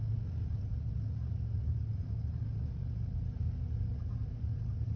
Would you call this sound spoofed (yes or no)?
no